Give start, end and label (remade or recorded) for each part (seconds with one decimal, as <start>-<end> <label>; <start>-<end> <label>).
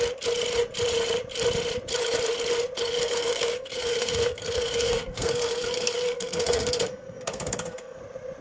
0.0-3.0 recorded; 3.0-8.0 remade; 8.0-8.4 recorded